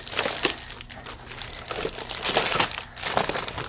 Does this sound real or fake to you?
real